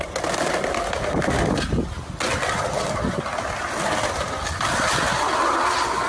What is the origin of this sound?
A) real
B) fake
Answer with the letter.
A